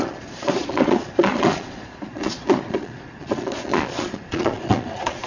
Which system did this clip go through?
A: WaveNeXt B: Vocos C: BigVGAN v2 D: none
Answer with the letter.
B